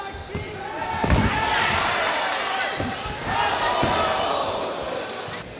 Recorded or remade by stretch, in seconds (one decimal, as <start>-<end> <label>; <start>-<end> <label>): 0.0-5.6 recorded